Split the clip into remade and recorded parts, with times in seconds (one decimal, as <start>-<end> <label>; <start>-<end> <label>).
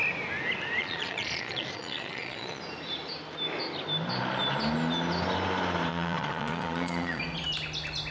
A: 0.0-0.8 recorded; 0.8-2.6 remade; 2.6-5.9 recorded; 5.9-7.2 remade; 7.2-8.1 recorded